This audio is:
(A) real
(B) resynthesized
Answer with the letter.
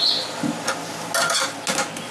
A